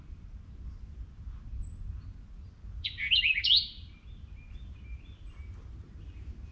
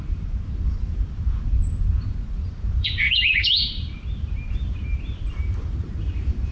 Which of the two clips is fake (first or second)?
second